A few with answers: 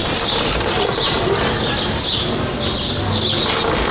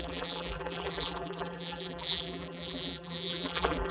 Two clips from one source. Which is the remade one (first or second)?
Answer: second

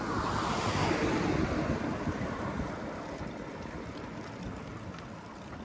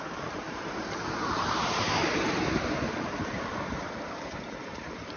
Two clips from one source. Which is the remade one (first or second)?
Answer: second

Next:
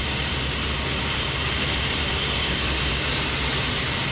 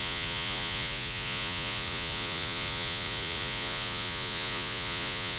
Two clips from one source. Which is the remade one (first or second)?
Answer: second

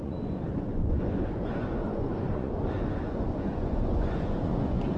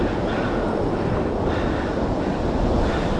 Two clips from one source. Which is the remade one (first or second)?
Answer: first